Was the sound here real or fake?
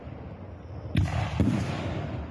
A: real